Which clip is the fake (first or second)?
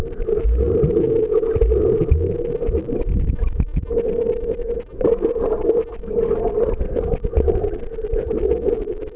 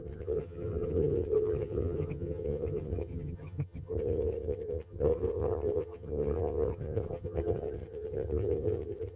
second